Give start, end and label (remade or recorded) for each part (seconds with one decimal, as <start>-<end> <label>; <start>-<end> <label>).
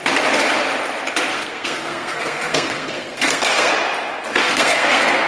0.0-1.3 recorded; 1.3-3.7 remade; 3.7-4.4 recorded; 4.4-5.3 remade